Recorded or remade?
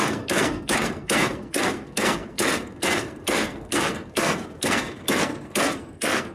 remade